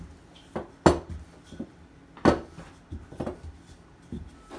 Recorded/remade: recorded